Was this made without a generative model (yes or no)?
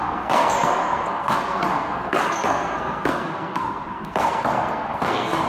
no